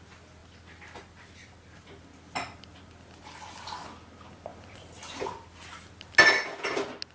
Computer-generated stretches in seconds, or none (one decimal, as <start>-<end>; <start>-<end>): none